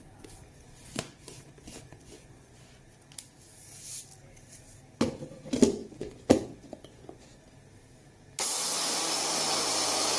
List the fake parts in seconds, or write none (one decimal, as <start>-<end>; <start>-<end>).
0.4-2.8; 5.8-7.4